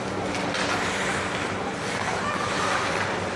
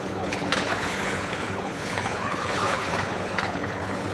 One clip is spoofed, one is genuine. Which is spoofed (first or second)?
second